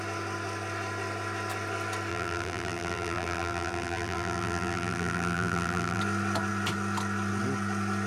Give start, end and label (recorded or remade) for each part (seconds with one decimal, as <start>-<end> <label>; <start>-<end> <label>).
0.0-2.1 recorded; 2.1-6.0 remade; 6.0-8.1 recorded

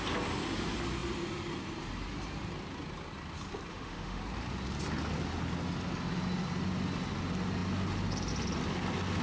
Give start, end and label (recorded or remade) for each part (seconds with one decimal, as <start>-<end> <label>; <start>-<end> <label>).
0.0-3.7 recorded; 3.7-4.2 remade; 4.2-9.2 recorded

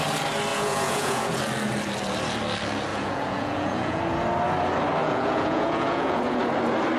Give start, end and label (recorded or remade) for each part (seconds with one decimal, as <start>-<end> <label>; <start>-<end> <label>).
0.0-0.5 recorded; 0.5-1.4 remade; 1.4-2.9 recorded; 2.9-4.0 remade; 4.0-5.0 recorded; 5.0-6.4 remade; 6.4-7.0 recorded

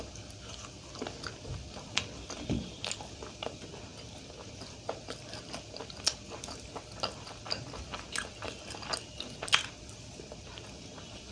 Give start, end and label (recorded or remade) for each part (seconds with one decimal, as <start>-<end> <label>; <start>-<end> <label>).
0.0-11.3 recorded

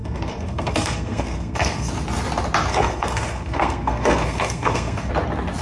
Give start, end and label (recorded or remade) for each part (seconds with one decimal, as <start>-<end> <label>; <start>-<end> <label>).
0.0-1.9 remade; 1.9-2.7 recorded; 2.7-5.1 remade; 5.1-5.6 recorded

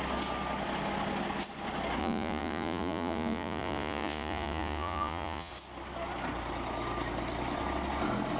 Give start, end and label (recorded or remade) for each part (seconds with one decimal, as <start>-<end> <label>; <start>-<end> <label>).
0.0-2.0 recorded; 2.0-5.5 remade; 5.5-8.4 recorded

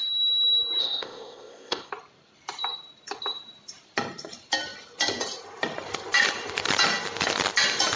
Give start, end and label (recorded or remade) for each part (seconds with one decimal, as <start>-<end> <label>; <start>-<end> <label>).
0.0-0.8 recorded; 0.8-1.9 remade; 1.9-8.0 recorded

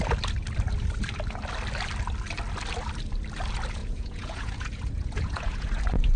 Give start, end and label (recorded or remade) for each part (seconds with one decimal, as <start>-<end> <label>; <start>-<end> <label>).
0.0-3.8 recorded; 3.8-5.7 remade; 5.7-6.2 recorded